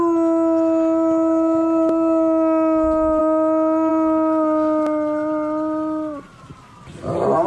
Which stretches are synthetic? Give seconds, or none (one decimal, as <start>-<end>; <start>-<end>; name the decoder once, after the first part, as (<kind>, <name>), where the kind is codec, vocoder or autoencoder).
none